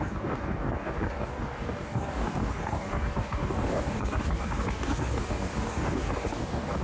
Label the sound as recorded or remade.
remade